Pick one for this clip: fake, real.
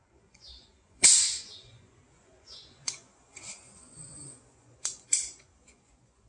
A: fake